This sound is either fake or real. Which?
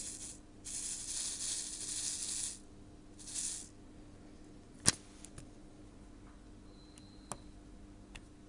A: real